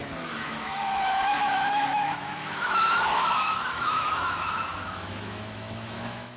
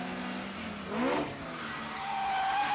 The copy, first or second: first